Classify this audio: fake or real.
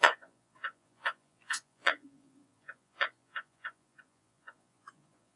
fake